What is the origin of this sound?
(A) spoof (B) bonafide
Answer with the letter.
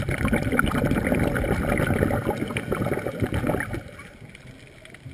B